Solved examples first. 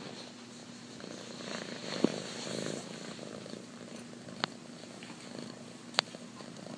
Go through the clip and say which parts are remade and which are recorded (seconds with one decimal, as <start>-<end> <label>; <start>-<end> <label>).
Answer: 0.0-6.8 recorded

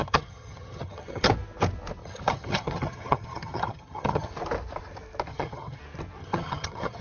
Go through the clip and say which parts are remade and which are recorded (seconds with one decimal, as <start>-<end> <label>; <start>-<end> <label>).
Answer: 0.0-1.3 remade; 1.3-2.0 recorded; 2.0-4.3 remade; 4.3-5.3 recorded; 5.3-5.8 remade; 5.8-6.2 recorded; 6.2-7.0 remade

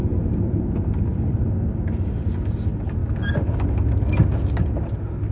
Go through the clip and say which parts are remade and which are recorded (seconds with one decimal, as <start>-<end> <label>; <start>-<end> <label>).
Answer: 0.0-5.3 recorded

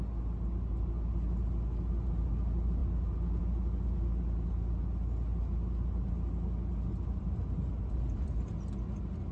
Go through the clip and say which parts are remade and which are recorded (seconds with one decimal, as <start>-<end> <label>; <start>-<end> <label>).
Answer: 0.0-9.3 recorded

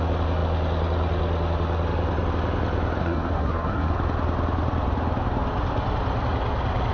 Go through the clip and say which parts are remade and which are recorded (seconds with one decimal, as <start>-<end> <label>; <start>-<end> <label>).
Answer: 0.0-3.0 recorded; 3.0-3.9 remade; 3.9-6.9 recorded

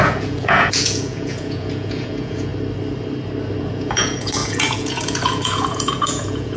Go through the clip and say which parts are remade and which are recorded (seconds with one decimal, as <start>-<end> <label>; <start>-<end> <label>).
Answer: 0.0-2.5 remade; 2.5-3.6 recorded; 3.6-6.6 remade